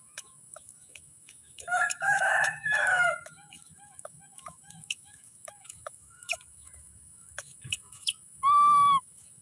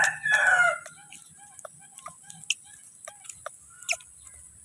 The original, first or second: second